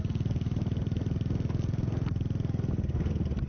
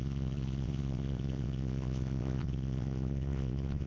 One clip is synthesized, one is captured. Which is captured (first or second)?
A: first